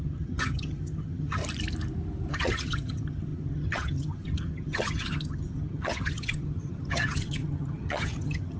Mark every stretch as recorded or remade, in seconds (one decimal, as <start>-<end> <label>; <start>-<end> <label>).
0.0-1.4 remade; 1.4-2.3 recorded; 2.3-8.6 remade